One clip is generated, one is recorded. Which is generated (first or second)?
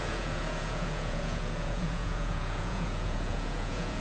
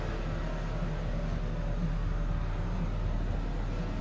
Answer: first